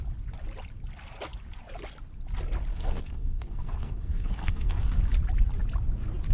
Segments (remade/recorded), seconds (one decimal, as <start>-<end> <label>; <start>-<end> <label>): 0.0-2.7 recorded; 2.7-5.0 remade; 5.0-6.3 recorded